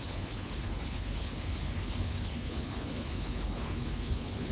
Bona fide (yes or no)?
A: no